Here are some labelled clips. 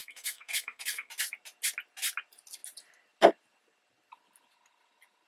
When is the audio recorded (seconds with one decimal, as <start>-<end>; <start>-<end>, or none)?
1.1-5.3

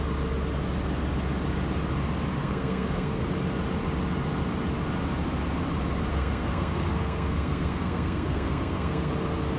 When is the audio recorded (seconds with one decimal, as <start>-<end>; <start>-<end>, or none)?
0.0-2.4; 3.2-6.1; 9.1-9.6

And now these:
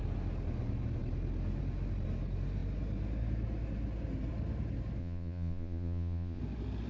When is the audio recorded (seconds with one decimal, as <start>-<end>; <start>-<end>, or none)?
0.0-5.0; 6.4-6.9

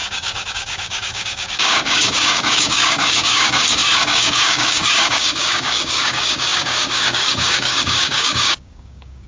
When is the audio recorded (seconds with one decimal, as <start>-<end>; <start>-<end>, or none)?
none

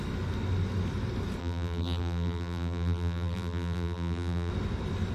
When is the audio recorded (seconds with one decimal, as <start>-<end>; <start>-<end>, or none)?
0.0-1.4; 4.5-5.1